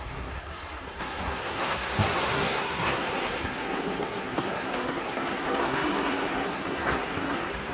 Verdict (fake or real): fake